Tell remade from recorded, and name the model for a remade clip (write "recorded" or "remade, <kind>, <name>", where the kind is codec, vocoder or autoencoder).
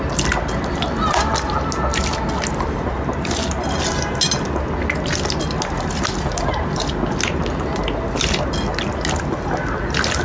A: recorded